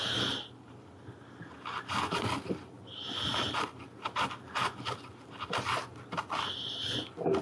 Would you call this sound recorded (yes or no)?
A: yes